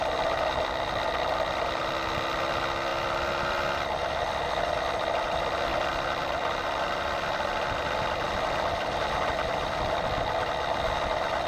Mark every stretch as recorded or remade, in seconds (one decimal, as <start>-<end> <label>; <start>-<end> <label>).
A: 0.0-2.9 recorded; 2.9-4.7 remade; 4.7-5.7 recorded; 5.7-9.9 remade; 9.9-11.5 recorded